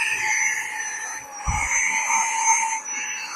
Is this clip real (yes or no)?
yes